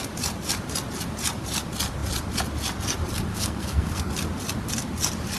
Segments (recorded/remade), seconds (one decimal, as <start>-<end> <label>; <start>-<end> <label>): 0.0-3.3 recorded; 3.3-4.1 remade; 4.1-5.4 recorded